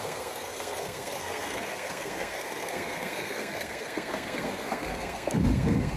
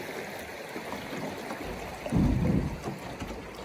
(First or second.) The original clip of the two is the second